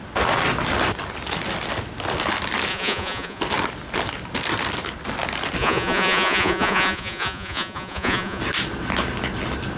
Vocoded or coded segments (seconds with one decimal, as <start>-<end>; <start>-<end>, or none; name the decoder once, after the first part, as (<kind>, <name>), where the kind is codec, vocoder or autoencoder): 2.7-3.4 (vocoder, Vocos); 5.6-8.4